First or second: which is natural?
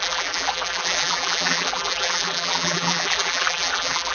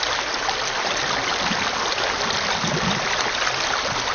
second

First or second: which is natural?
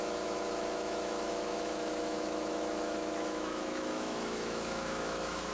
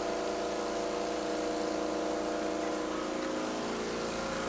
second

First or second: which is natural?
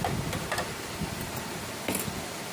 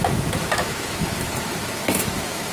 first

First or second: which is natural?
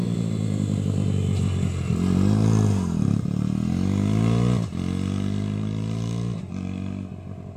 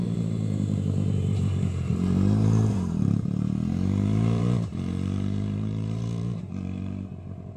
first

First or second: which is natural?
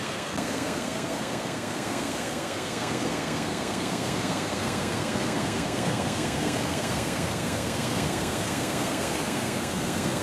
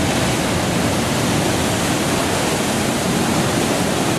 second